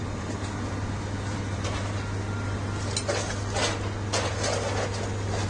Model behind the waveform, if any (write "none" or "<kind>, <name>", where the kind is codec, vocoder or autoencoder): none